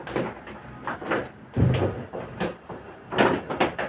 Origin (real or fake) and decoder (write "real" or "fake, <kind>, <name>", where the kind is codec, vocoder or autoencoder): real